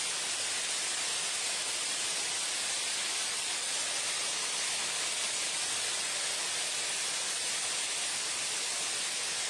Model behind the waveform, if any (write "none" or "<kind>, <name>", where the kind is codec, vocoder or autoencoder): none